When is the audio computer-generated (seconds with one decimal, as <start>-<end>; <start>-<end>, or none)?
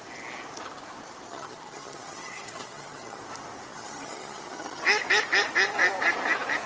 1.3-3.2; 3.7-4.8